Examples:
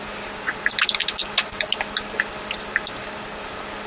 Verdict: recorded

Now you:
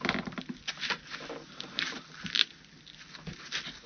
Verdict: recorded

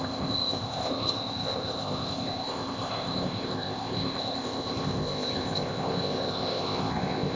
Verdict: remade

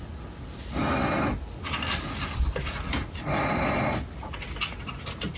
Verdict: recorded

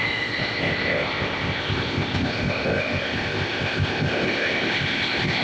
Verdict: remade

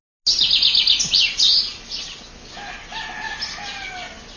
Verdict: recorded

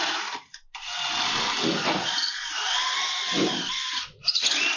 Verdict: recorded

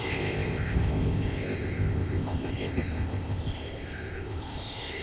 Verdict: remade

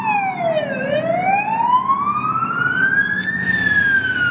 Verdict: recorded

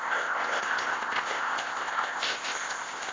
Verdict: remade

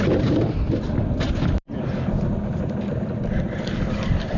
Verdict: recorded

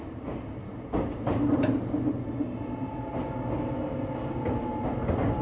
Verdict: recorded